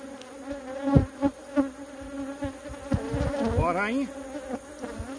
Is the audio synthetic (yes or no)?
no